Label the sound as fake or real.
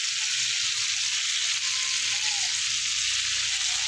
real